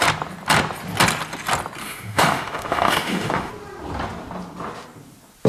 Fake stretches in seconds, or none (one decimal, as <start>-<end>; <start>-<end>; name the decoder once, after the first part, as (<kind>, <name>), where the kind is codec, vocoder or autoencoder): 1.8-3.5 (autoencoder, DAC-VAE)